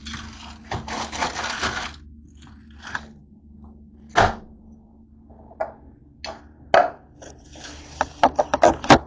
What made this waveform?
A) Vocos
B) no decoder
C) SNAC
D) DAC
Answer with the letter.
B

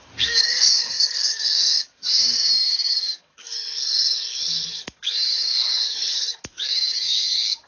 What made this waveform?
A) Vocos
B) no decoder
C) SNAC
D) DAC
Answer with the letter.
D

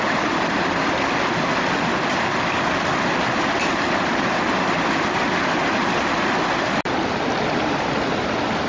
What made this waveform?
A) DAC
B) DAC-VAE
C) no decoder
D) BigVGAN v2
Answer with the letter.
C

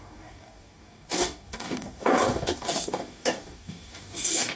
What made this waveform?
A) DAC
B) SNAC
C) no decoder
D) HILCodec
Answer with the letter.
A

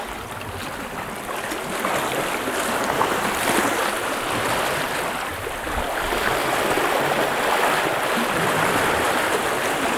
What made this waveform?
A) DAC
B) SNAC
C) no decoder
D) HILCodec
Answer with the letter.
C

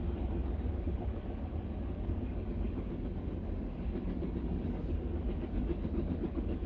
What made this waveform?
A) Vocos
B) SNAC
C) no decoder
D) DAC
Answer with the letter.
D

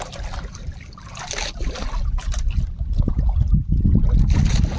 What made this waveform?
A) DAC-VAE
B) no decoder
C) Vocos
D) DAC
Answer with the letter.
B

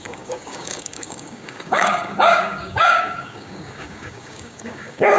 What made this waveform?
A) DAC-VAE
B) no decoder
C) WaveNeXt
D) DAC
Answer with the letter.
D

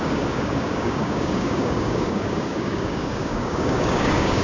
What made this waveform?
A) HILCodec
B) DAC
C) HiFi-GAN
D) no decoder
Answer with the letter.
B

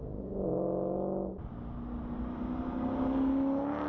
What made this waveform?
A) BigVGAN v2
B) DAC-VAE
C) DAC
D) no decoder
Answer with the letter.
D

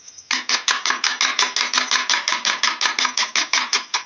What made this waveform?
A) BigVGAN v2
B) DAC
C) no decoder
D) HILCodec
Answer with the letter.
C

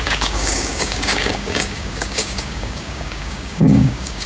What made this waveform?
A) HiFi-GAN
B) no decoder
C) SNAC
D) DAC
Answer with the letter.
D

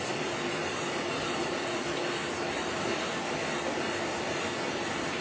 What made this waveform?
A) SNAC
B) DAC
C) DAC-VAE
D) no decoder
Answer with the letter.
D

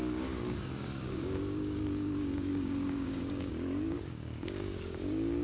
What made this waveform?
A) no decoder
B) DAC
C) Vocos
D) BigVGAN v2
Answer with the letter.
B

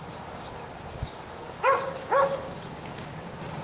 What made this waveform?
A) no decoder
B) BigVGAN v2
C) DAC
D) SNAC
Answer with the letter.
C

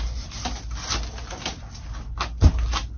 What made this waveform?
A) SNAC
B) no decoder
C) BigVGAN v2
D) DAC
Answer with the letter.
B